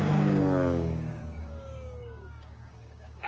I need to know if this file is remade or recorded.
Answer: remade